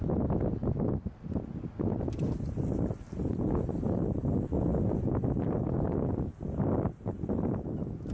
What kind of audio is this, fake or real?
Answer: real